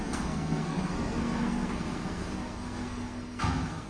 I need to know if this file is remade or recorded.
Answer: remade